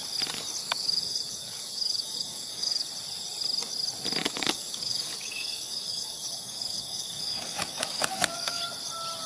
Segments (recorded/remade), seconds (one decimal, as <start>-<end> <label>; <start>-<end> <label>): 0.0-0.6 recorded; 0.6-2.9 remade; 2.9-4.2 recorded; 4.2-8.6 remade; 8.6-9.3 recorded